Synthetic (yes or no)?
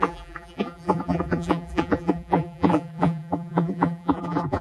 yes